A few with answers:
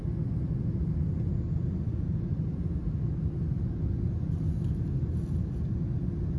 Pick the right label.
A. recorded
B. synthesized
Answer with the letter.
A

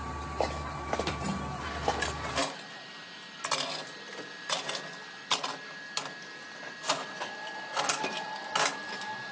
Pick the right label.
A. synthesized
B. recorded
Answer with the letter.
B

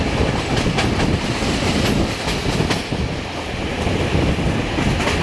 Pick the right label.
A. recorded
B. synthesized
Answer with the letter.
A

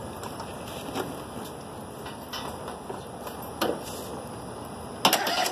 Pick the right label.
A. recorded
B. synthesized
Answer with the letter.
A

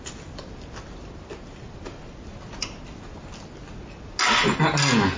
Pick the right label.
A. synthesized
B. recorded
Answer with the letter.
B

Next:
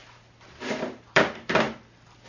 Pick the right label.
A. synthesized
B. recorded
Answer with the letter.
A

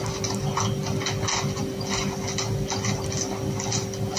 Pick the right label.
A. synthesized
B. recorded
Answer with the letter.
B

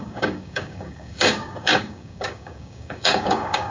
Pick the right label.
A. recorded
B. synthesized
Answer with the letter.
B